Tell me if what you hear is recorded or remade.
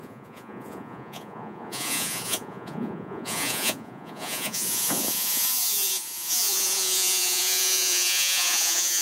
remade